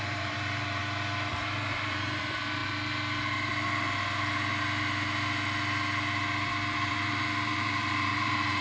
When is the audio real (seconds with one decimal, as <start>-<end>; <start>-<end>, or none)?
0.8-1.3; 2.6-6.9